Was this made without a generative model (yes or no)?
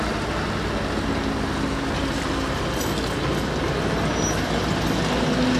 yes